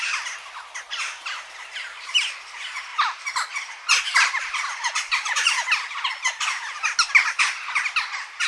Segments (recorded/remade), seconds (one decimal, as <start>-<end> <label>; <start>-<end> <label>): 0.0-2.9 recorded; 2.9-5.5 remade; 5.5-8.5 recorded